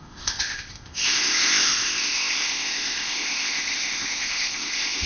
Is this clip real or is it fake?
fake